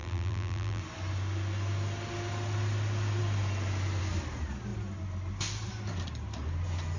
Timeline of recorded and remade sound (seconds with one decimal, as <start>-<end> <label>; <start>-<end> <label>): 0.0-0.8 remade; 0.8-7.0 recorded